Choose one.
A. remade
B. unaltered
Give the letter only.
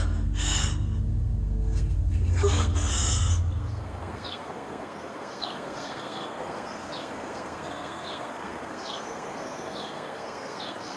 A